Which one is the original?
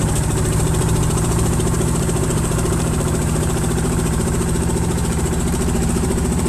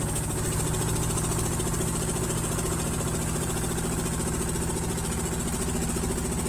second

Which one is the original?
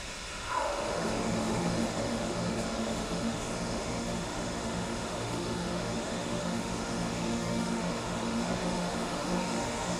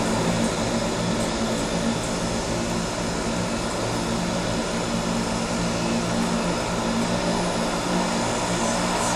second